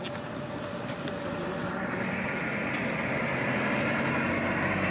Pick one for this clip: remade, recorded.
recorded